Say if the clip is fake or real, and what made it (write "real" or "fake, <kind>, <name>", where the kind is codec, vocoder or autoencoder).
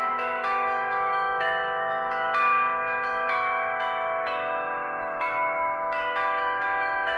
fake, autoencoder, DAC-VAE